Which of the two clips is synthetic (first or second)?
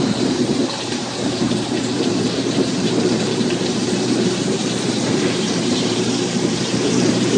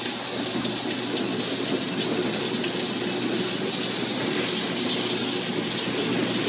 first